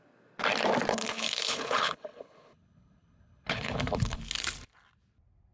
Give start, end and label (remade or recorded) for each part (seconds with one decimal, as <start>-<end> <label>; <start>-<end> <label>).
0.0-0.9 recorded; 0.9-4.2 remade; 4.2-5.5 recorded